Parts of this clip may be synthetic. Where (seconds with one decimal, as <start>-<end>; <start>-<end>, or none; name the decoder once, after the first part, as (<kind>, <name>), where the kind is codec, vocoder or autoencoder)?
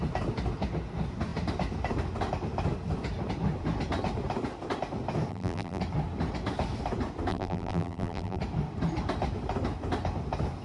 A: 5.3-5.8 (vocoder, BigVGAN v2); 7.3-8.4